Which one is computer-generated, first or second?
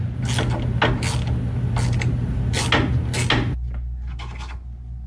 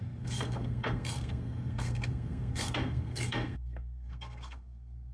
second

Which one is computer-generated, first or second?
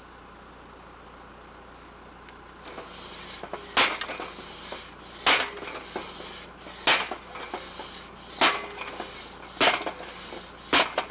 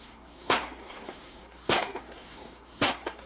second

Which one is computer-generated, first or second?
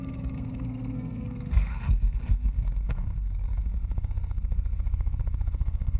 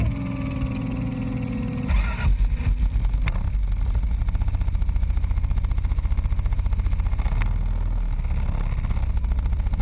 first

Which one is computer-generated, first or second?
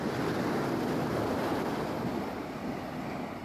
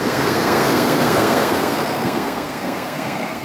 second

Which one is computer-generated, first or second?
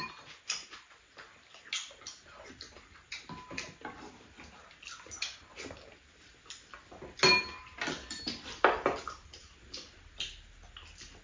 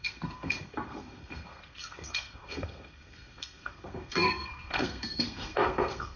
second